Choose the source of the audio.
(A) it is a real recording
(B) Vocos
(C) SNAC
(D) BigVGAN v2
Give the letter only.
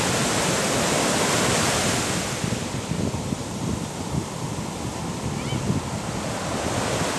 A